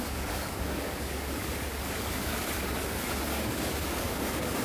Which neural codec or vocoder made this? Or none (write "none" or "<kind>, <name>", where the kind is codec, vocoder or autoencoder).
codec, DAC